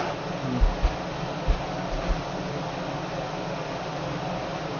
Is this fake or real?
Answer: real